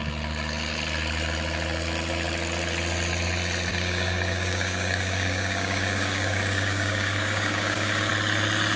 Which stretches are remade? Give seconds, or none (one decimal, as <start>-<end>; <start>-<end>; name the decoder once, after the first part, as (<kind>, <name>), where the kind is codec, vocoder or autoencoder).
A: 3.7-8.1 (codec, DAC)